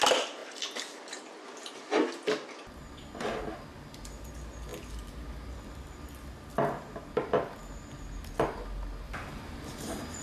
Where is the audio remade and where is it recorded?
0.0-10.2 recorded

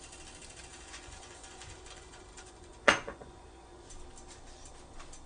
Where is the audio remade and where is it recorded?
0.0-0.7 recorded; 0.7-3.9 remade; 3.9-5.3 recorded

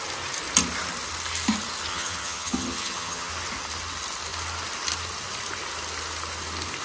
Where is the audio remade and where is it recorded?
0.0-1.9 recorded; 1.9-3.3 remade; 3.3-6.8 recorded